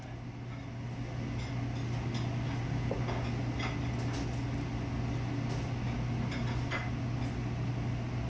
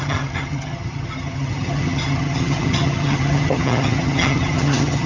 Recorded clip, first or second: first